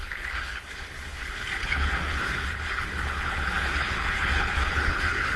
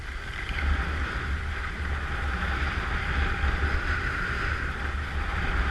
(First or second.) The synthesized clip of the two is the first